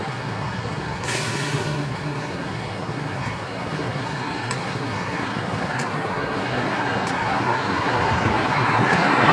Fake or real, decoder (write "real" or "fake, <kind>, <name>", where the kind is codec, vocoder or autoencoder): fake, codec, SNAC